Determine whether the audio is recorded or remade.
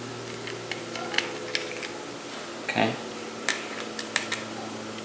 recorded